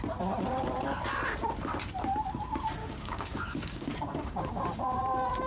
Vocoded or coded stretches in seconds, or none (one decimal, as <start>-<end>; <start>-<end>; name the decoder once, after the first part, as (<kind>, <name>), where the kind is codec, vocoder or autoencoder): 2.8-4.5 (codec, DAC)